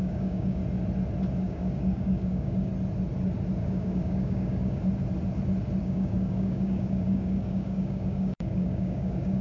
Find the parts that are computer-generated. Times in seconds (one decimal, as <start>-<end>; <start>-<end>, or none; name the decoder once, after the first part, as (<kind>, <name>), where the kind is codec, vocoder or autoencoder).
0.0-0.6 (codec, DAC); 1.4-2.7; 3.6-4.8; 5.8-9.4